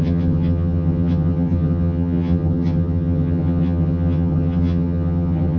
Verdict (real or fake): fake